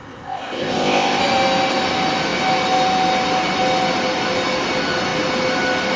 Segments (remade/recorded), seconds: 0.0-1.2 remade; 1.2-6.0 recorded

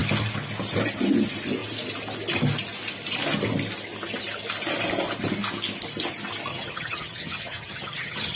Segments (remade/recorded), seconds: 0.0-6.5 recorded; 6.5-8.4 remade

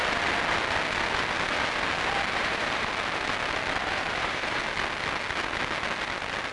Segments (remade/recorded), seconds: 0.0-2.4 recorded; 2.4-2.9 remade; 2.9-3.8 recorded; 3.8-4.6 remade; 4.6-6.5 recorded

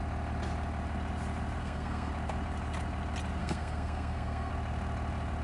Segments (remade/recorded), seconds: 0.0-1.6 recorded; 1.6-2.1 remade; 2.1-3.4 recorded; 3.4-4.5 remade; 4.5-5.4 recorded

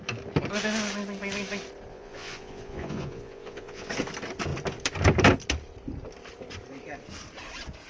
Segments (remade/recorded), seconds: 0.0-1.9 recorded; 1.9-3.9 remade; 3.9-7.9 recorded